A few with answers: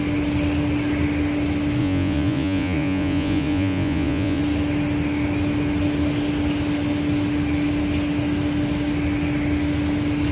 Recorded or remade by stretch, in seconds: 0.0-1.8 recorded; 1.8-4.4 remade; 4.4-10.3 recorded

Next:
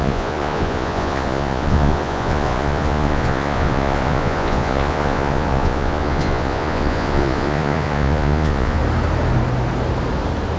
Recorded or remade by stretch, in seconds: 0.0-8.8 remade; 8.8-10.6 recorded

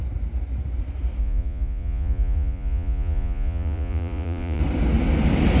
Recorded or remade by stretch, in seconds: 0.0-1.2 recorded; 1.2-4.6 remade; 4.6-5.6 recorded

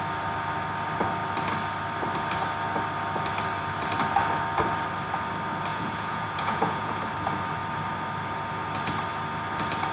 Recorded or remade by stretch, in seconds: 0.0-5.7 recorded; 5.7-7.0 remade; 7.0-9.9 recorded

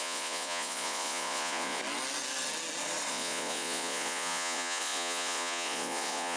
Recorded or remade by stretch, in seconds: 0.0-1.8 remade; 1.8-3.1 recorded; 3.1-6.4 remade

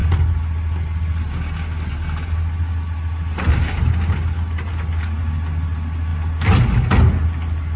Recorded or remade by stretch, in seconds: 0.0-7.8 recorded

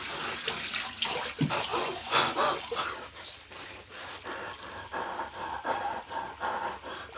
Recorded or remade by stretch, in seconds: 0.0-1.7 recorded; 1.7-2.6 remade; 2.6-7.2 recorded